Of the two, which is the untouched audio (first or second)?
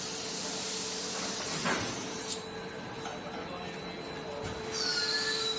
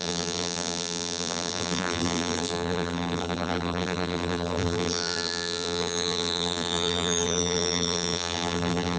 first